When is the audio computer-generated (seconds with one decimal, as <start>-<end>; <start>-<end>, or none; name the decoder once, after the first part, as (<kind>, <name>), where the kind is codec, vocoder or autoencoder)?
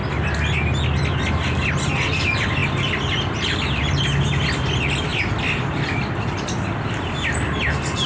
none